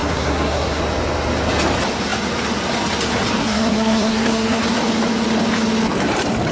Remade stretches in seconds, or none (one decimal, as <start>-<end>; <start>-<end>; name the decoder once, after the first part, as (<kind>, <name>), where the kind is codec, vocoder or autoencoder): 0.0-0.8 (codec, SNAC); 3.4-4.6